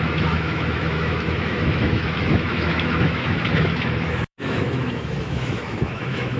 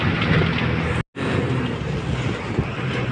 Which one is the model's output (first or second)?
first